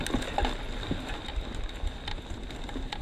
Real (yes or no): yes